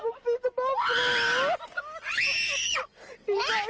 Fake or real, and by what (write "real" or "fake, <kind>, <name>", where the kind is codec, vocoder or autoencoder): real